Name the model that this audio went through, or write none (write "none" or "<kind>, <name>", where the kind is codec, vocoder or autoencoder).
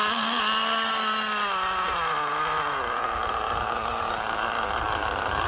none